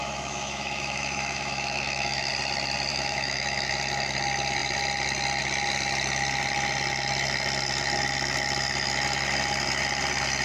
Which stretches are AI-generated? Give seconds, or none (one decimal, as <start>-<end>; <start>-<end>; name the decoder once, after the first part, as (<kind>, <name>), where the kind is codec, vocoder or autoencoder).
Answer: 0.0-2.3 (autoencoder, DAC-VAE); 2.9-3.7